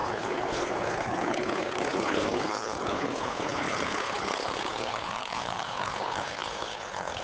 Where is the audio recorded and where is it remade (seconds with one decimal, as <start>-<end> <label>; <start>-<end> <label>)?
0.0-7.2 remade